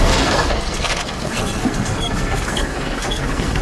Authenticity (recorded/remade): remade